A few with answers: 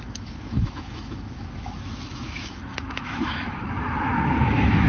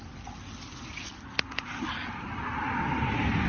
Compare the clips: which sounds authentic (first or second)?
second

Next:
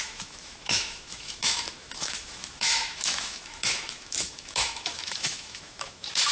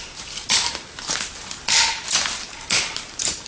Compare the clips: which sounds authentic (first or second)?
second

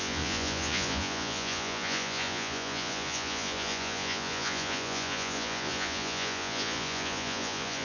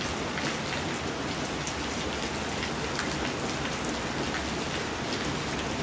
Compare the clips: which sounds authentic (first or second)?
second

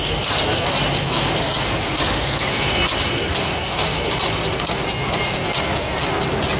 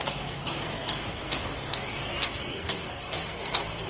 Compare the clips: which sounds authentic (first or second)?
first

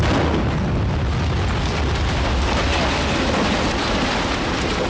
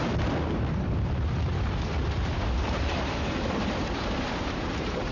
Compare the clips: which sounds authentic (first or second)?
first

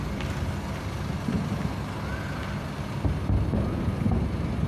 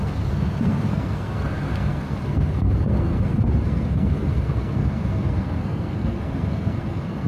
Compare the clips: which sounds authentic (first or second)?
first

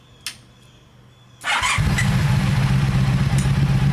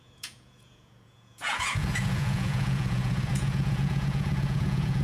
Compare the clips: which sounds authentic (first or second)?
first